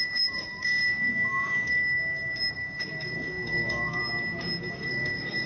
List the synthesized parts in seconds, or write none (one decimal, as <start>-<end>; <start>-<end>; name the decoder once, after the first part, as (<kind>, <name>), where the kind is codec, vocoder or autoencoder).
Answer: 0.0-1.8 (codec, DAC); 2.5-4.0; 4.7-5.5